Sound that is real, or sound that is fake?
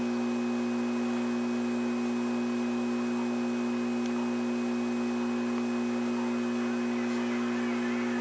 real